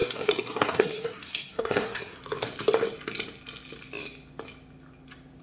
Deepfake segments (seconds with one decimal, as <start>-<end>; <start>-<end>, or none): 0.0-2.2